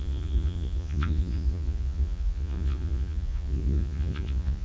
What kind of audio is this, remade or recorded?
remade